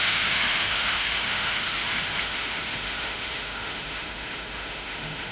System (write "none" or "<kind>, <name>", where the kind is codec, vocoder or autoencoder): autoencoder, DAC-VAE